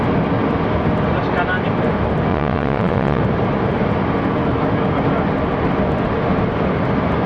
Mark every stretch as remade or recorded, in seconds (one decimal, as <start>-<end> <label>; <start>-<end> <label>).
0.0-2.3 recorded; 2.3-3.2 remade; 3.2-7.3 recorded

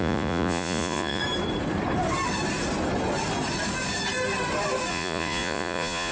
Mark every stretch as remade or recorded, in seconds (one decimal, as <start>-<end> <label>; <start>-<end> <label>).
0.0-1.2 remade; 1.2-4.9 recorded; 4.9-6.1 remade

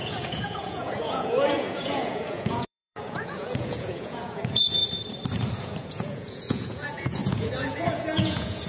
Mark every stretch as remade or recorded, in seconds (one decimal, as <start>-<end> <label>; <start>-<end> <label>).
0.0-4.8 remade; 4.8-5.6 recorded; 5.6-8.7 remade

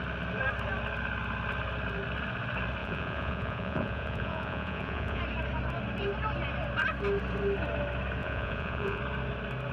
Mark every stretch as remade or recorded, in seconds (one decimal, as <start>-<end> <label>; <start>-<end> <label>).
0.0-2.8 recorded; 2.8-5.2 remade; 5.2-8.2 recorded; 8.2-9.0 remade; 9.0-9.7 recorded

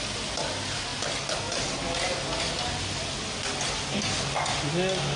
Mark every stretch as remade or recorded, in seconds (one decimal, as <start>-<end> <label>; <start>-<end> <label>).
0.0-5.2 recorded

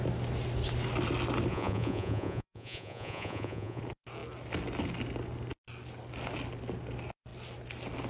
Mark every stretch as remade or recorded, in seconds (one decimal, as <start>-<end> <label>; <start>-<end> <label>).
0.0-1.5 recorded; 1.5-3.8 remade; 3.8-8.1 recorded

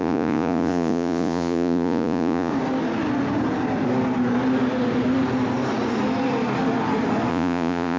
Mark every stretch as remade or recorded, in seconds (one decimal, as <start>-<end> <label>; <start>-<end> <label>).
0.0-2.5 remade; 2.5-7.3 recorded; 7.3-8.0 remade

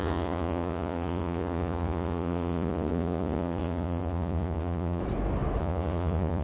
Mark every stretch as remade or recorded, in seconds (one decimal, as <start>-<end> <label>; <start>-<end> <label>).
0.0-5.0 remade; 5.0-5.6 recorded; 5.6-6.4 remade